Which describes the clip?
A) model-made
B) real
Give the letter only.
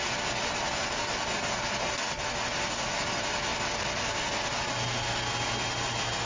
B